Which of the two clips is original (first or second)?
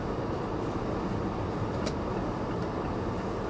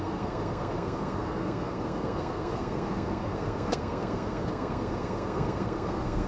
first